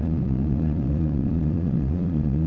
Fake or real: fake